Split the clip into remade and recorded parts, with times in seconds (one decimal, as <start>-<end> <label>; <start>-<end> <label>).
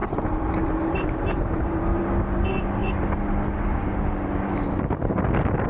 0.0-2.0 remade; 2.0-5.7 recorded